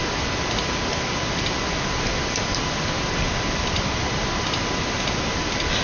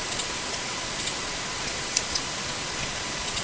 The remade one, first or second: second